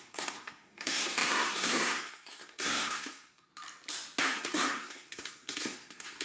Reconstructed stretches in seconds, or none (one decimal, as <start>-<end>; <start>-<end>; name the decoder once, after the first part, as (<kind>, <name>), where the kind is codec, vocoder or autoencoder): 0.0-3.5 (codec, SNAC); 4.2-6.2